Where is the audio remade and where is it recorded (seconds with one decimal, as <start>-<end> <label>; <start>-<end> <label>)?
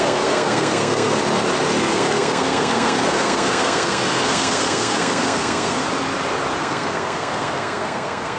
0.0-1.2 remade; 1.2-1.8 recorded; 1.8-5.8 remade; 5.8-6.6 recorded; 6.6-8.4 remade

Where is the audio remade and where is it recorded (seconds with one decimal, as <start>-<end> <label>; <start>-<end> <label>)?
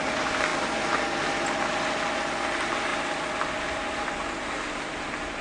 0.0-5.4 recorded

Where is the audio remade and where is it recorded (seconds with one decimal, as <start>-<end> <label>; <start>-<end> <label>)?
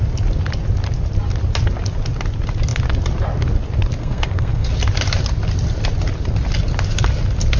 0.0-4.0 recorded; 4.0-4.7 remade; 4.7-7.6 recorded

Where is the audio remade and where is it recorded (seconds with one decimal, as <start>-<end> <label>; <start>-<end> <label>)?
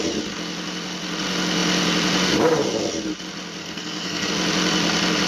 0.0-3.6 recorded; 3.6-4.3 remade; 4.3-5.3 recorded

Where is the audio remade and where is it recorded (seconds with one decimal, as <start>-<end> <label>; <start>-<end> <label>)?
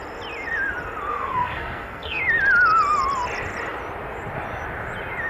0.0-1.1 recorded; 1.1-2.2 remade; 2.2-5.3 recorded